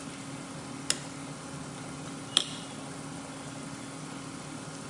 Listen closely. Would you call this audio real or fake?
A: real